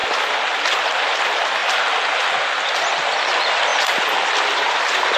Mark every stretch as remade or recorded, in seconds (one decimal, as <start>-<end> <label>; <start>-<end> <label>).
0.0-5.2 recorded